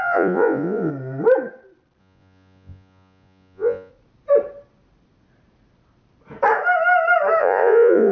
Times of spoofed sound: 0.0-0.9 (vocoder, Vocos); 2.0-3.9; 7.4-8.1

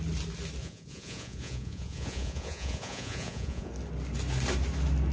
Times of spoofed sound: 0.6-3.7 (vocoder, Vocos)

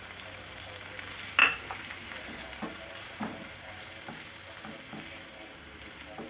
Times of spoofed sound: 1.4-3.8 (vocoder, BigVGAN v2); 5.3-6.3

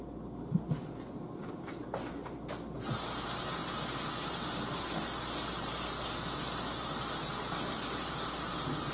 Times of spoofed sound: none

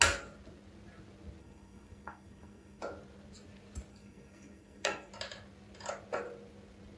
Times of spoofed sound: 1.4-2.8 (codec, SNAC); 3.9-5.1

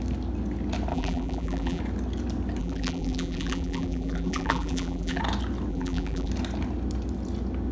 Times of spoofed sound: 0.9-1.8 (vocoder, BigVGAN v2); 2.6-5.2; 5.7-6.3

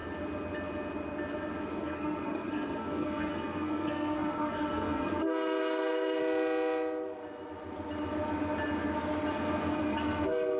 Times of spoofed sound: 1.8-6.2 (codec, SNAC); 9.7-10.6